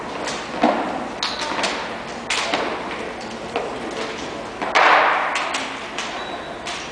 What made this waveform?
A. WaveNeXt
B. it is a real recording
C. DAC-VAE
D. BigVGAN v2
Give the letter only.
B